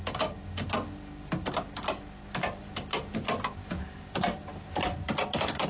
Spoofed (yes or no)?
no